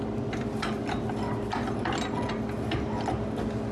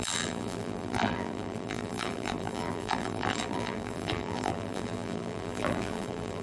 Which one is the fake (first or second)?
second